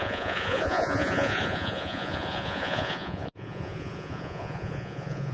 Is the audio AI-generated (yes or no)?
yes